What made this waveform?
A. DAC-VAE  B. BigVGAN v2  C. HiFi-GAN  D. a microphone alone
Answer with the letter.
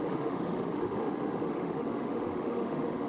A